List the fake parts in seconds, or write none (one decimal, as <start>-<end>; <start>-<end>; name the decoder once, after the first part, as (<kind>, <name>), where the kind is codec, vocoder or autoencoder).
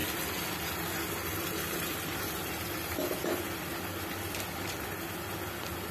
none